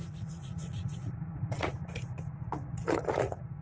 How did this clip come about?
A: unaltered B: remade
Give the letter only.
B